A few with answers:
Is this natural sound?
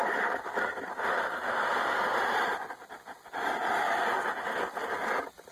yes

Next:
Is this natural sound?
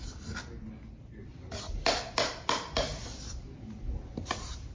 yes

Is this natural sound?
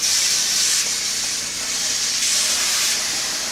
no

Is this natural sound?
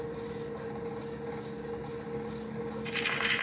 yes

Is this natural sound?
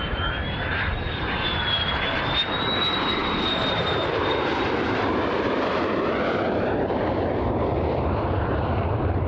no